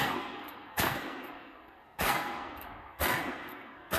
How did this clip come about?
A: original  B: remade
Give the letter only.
B